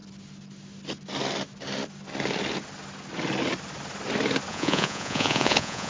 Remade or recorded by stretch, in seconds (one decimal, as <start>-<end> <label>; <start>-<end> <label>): 0.0-4.5 recorded; 4.5-5.9 remade